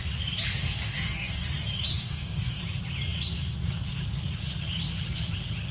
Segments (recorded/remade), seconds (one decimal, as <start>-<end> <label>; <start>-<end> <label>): 0.0-0.6 recorded; 0.6-1.4 remade; 1.4-1.9 recorded; 1.9-2.6 remade; 2.6-5.7 recorded